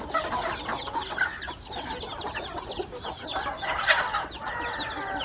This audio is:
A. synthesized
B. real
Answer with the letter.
B